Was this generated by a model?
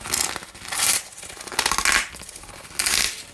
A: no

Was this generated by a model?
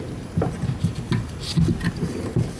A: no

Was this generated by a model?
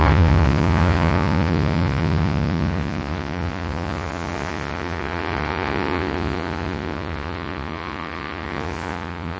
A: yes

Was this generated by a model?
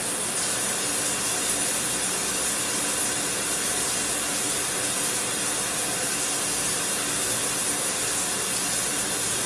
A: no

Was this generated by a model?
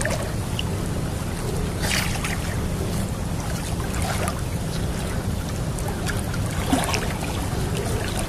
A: no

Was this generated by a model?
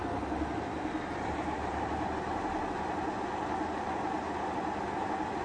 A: no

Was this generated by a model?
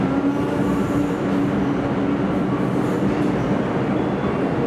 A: no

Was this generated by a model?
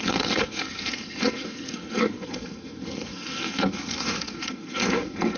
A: yes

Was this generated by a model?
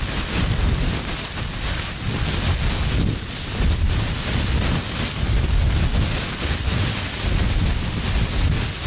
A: no